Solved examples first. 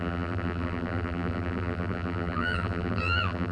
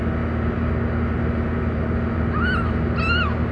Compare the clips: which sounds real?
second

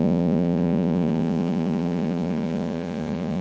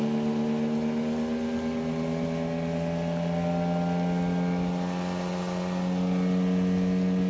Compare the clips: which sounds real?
second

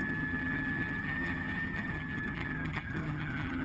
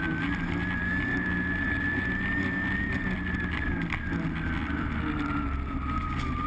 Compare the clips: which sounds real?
second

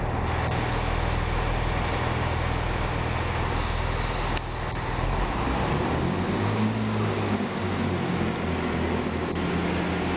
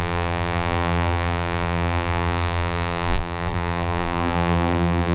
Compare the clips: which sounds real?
first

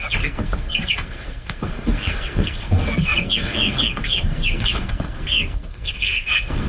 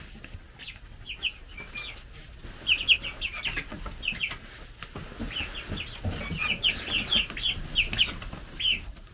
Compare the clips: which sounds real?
second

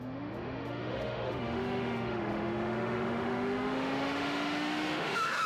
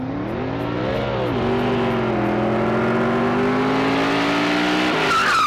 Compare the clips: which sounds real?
second